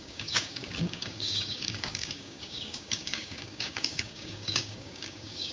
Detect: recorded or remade remade